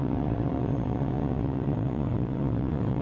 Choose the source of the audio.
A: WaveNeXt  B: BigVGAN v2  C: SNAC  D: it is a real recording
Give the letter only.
A